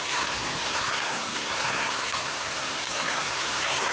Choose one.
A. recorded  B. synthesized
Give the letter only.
B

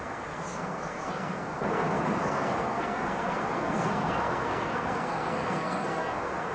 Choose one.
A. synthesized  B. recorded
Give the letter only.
A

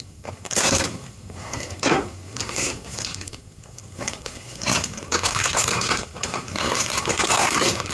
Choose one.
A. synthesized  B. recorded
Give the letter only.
A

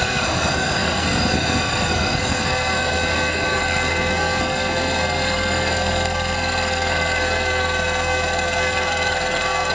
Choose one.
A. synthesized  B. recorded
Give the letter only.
A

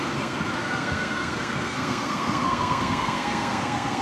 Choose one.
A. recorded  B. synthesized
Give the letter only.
B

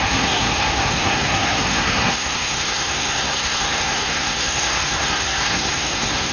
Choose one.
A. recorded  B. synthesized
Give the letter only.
B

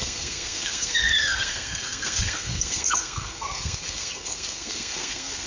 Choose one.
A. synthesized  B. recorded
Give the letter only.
A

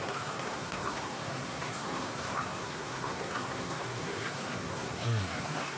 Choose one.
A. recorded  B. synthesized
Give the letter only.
B